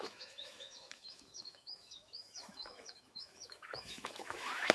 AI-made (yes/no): yes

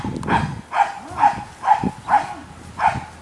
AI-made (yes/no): no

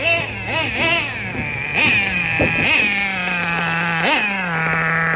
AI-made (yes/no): no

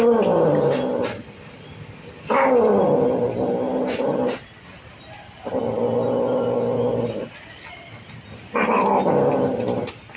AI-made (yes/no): no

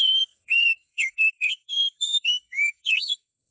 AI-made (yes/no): yes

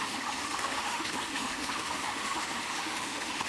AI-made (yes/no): yes